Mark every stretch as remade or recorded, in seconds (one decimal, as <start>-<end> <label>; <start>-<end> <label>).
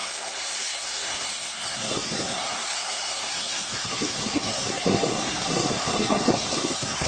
0.0-7.1 remade